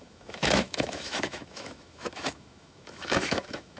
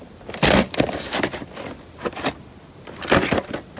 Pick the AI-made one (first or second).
first